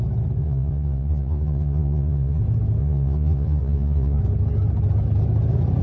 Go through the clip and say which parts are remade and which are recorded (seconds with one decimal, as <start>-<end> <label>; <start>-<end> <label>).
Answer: 0.0-0.4 recorded; 0.4-2.4 remade; 2.4-2.8 recorded; 2.8-4.2 remade; 4.2-5.8 recorded